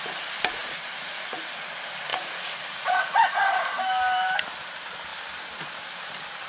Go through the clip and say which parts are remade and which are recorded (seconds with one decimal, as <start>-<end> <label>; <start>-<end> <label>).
0.0-0.6 recorded; 0.6-1.5 remade; 1.5-2.1 recorded; 2.1-3.4 remade; 3.4-6.5 recorded